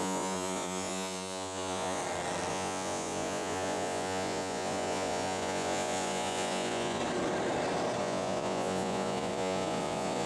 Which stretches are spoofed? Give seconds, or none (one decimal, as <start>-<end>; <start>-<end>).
0.0-2.0; 2.5-7.0; 8.0-10.3